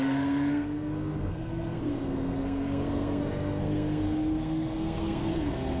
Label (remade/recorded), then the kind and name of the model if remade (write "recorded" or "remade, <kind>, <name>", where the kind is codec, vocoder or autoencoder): remade, codec, SNAC